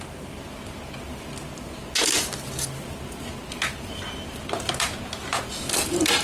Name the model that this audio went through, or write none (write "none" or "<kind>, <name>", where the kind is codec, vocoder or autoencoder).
none